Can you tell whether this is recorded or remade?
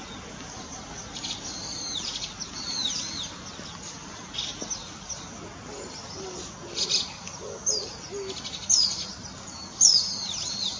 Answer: recorded